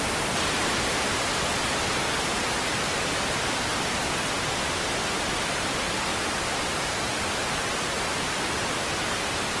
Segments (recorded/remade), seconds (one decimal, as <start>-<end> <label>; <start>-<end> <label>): 0.0-9.6 recorded